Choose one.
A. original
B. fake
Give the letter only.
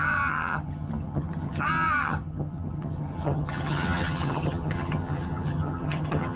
B